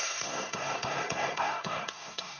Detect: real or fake fake